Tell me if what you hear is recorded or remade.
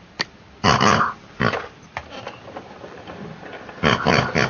recorded